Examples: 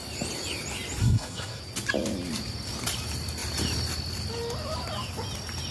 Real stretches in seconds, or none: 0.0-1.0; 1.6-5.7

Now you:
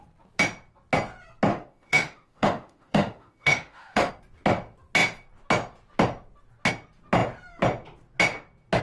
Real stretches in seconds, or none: 0.0-1.5; 4.1-8.8

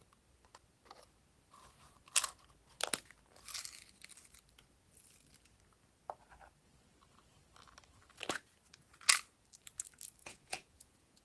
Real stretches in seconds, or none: 0.0-10.2

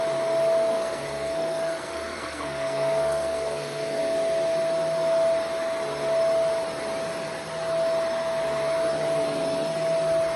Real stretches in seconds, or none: 0.0-0.7; 4.0-10.4

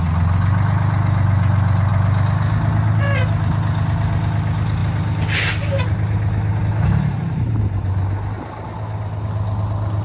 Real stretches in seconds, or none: 0.0-10.0

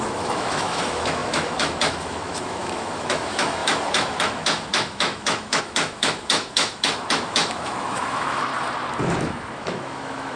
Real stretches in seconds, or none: 8.5-9.3

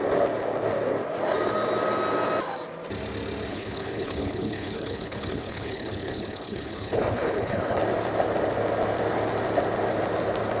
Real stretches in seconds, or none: 0.0-3.5; 7.8-10.6

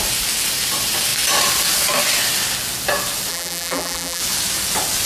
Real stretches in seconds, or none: 0.0-3.3; 4.2-5.1